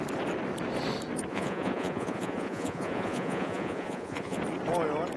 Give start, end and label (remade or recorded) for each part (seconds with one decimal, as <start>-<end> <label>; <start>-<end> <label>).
0.0-1.3 recorded; 1.3-4.4 remade; 4.4-5.2 recorded